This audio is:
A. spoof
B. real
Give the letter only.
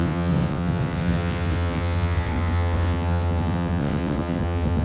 A